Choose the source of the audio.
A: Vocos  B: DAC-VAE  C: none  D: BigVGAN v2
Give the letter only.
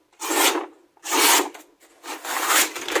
C